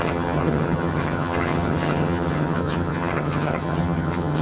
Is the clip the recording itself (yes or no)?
no